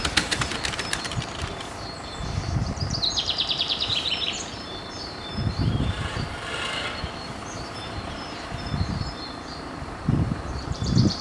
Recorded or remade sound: remade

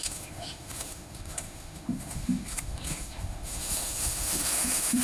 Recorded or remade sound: remade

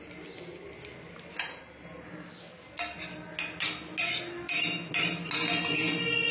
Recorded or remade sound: recorded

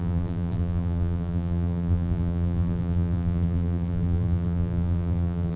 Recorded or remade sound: remade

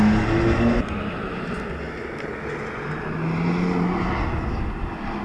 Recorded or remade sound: recorded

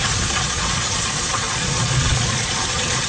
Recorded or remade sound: remade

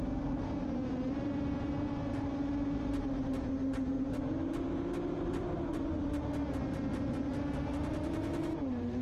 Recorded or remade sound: recorded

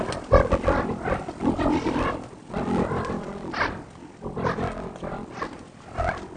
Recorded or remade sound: recorded